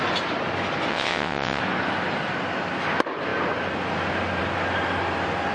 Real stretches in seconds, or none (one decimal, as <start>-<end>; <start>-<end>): 0.0-0.9; 1.6-5.5